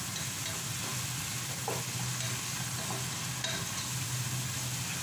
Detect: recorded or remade recorded